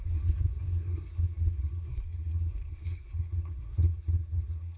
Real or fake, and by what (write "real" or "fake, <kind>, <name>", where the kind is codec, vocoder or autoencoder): fake, codec, SNAC